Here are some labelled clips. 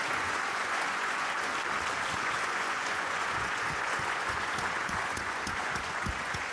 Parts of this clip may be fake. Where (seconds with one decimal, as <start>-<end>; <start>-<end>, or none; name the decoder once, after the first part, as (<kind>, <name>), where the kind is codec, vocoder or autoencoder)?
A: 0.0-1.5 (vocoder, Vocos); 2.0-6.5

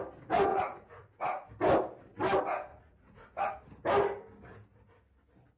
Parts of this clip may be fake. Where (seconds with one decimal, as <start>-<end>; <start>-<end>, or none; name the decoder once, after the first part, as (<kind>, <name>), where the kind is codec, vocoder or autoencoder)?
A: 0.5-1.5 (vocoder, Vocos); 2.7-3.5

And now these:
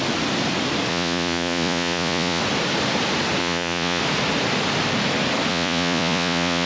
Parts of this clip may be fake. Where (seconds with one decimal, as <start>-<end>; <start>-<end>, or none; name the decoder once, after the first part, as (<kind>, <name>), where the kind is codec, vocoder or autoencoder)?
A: 0.9-2.4 (vocoder, Vocos); 3.4-4.0; 5.5-6.7